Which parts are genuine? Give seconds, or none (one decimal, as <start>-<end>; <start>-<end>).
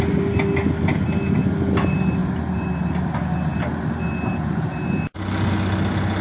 0.0-6.2